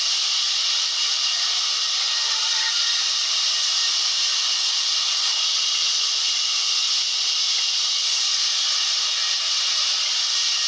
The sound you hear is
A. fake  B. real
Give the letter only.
B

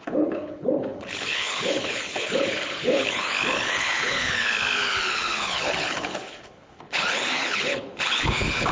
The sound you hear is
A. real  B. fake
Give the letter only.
B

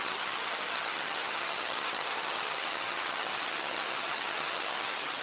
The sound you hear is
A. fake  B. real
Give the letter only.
A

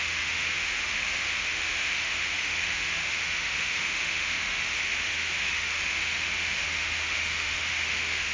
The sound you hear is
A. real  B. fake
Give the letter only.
B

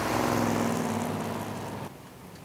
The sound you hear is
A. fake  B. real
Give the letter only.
B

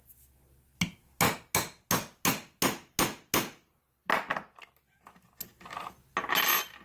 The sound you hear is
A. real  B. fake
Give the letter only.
A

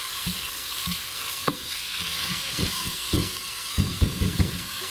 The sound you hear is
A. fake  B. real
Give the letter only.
A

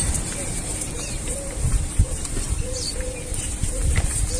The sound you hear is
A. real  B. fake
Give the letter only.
B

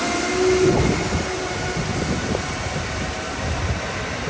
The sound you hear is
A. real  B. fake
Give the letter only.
A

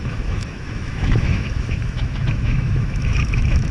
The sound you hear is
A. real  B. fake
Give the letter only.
B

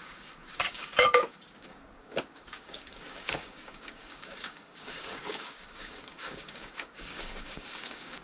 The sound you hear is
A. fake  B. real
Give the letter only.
A